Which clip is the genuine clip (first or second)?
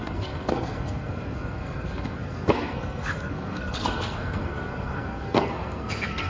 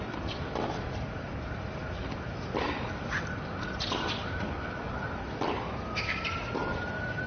second